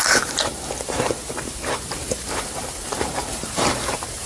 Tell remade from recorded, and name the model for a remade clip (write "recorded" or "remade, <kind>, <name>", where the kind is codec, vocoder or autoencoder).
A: remade, vocoder, BigVGAN v2